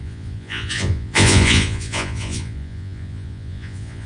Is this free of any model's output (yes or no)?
no